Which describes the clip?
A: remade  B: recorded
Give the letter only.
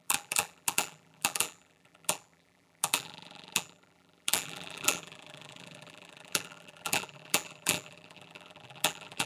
A